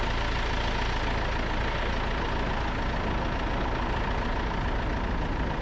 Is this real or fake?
real